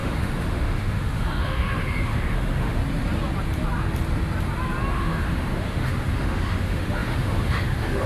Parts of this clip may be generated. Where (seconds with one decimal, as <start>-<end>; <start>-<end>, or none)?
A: 0.0-2.8; 4.9-8.1